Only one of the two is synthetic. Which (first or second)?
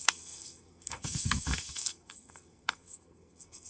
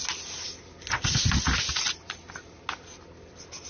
first